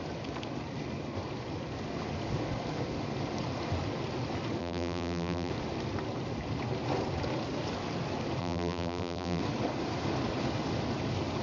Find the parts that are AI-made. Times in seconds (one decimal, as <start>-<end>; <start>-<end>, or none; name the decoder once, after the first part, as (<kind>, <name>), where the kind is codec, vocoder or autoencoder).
4.6-5.5 (vocoder, BigVGAN v2); 8.4-9.4